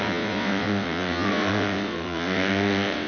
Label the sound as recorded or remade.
remade